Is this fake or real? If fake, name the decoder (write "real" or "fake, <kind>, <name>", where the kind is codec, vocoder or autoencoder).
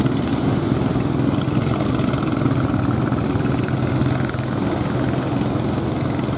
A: real